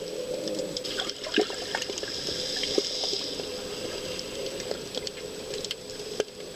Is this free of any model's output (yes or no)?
yes